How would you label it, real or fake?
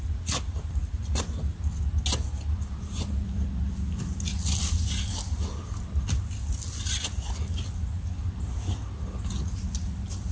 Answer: real